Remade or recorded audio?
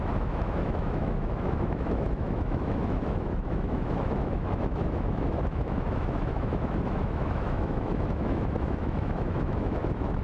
remade